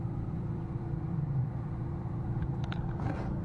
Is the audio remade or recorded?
remade